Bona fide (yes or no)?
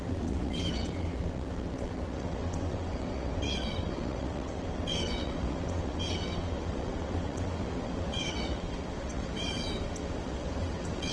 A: no